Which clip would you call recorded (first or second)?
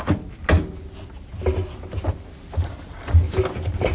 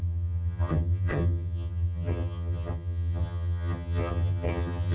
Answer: first